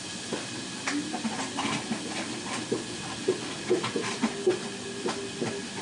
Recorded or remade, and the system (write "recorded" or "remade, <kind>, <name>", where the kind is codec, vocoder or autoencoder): recorded